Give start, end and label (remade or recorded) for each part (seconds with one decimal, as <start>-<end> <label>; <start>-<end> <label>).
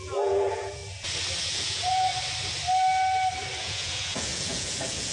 0.0-0.8 remade; 0.8-1.4 recorded; 1.4-2.1 remade; 2.1-3.6 recorded; 3.6-5.1 remade